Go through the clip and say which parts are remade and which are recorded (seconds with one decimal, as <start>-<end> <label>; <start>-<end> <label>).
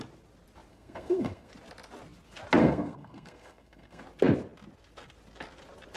0.0-0.7 recorded; 0.7-1.5 remade; 1.5-2.6 recorded; 2.6-4.0 remade; 4.0-6.0 recorded